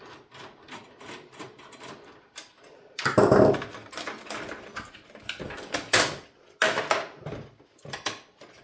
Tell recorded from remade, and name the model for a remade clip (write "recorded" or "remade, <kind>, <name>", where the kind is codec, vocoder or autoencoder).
recorded